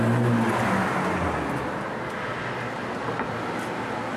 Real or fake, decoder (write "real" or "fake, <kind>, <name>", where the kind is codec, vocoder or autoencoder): real